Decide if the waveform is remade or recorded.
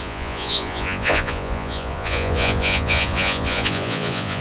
remade